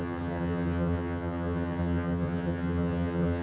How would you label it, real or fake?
fake